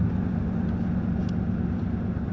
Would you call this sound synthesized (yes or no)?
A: no